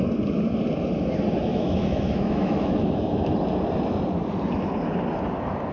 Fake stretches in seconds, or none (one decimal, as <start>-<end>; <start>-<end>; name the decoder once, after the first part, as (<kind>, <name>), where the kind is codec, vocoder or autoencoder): 1.5-3.3 (autoencoder, DAC-VAE)